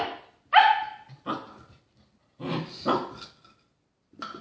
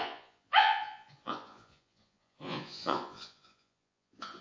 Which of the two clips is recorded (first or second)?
first